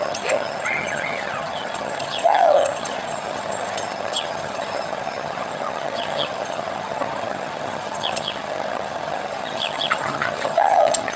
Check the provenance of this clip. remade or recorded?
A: remade